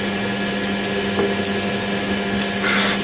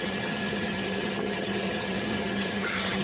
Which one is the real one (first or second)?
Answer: first